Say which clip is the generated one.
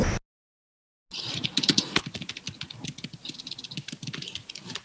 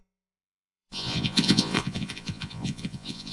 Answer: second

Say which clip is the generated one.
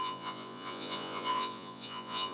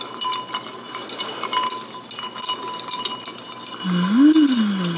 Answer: first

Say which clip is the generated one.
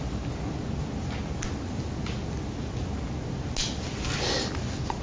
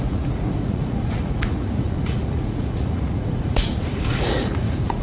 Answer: second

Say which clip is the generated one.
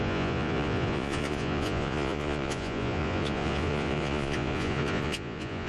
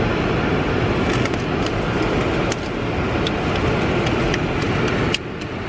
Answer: first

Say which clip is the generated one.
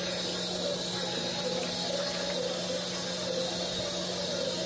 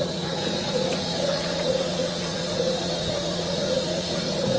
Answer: second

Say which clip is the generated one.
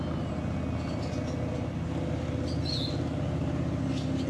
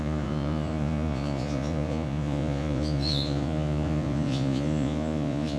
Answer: second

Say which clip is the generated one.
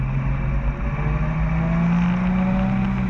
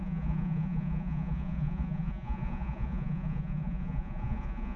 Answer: second